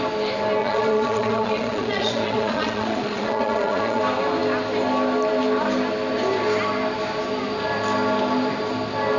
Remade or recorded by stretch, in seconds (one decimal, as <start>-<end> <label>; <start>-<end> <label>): 0.0-0.6 recorded; 0.6-4.0 remade; 4.0-9.2 recorded